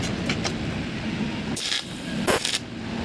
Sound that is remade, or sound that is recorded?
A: recorded